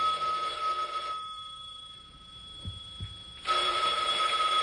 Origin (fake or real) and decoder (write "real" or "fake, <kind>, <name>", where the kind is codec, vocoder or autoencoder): fake, vocoder, BigVGAN v2